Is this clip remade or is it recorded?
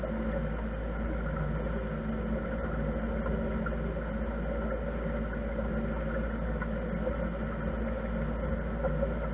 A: recorded